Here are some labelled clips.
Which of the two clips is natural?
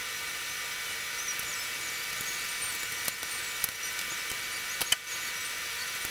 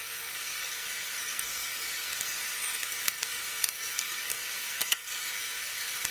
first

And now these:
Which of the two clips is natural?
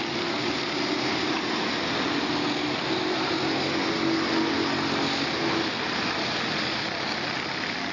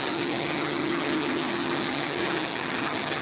first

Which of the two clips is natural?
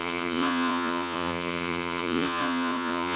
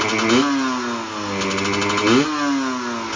second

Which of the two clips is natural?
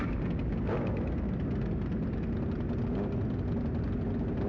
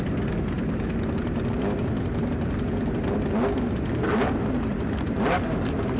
first